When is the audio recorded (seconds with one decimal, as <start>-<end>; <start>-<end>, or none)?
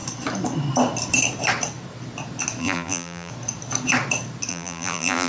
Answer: 0.0-2.6; 3.3-4.5